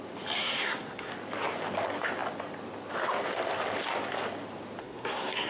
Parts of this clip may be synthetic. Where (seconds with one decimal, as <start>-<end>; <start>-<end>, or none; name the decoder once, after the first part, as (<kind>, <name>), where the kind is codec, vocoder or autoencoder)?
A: 0.4-1.1 (codec, SNAC); 4.8-5.5